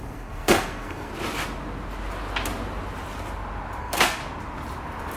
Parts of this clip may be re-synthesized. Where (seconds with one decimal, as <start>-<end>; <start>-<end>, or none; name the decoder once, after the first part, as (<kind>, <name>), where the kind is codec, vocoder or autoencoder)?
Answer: 0.0-1.1 (codec, SNAC); 3.8-4.2